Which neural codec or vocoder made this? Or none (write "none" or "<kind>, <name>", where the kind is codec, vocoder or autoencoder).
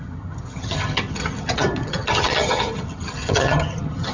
vocoder, HiFi-GAN